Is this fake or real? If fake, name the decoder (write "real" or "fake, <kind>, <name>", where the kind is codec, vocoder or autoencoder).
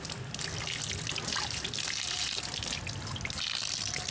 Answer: real